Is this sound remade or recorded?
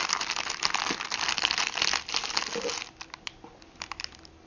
recorded